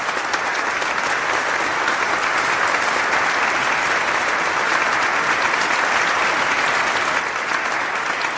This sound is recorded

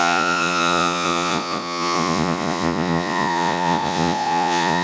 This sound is remade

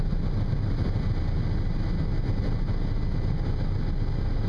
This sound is recorded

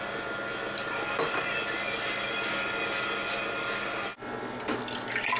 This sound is recorded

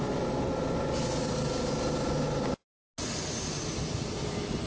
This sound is recorded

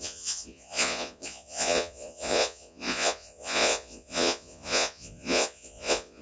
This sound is remade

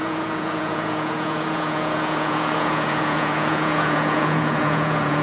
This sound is remade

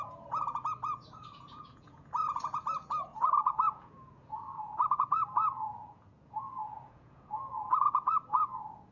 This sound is remade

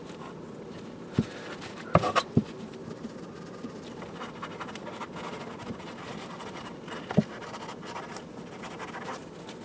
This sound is recorded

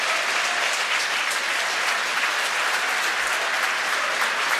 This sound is recorded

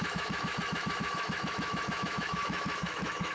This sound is remade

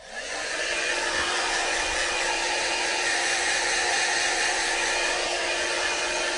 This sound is remade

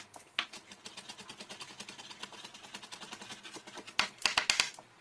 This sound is recorded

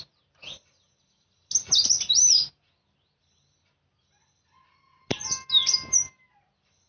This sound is recorded